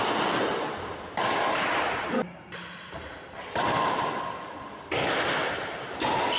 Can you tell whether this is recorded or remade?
recorded